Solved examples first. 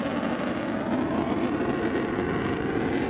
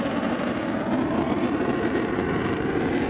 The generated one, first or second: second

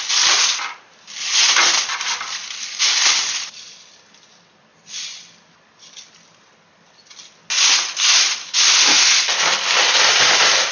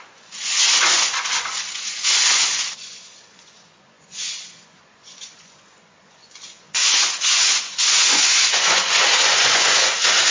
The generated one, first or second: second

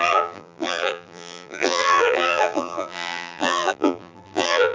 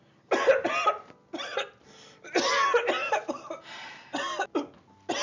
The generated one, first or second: first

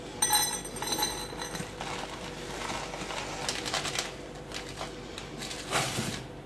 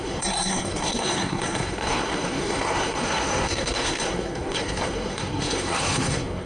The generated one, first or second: second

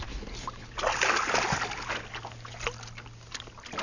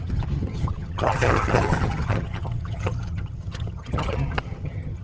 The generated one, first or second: second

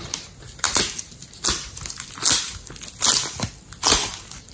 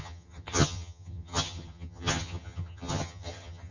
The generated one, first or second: second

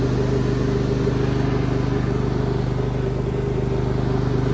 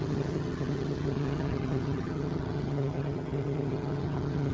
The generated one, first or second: second